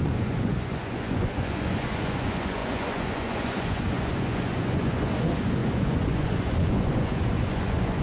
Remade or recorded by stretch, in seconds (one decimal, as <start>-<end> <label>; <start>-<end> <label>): 0.0-8.0 remade